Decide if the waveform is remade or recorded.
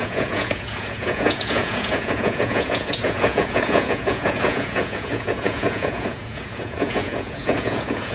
remade